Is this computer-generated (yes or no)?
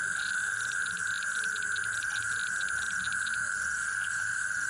no